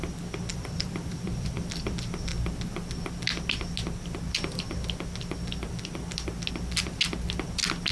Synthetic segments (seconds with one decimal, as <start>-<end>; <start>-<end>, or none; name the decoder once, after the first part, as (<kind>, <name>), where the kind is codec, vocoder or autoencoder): 0.5-1.8 (vocoder, BigVGAN v2)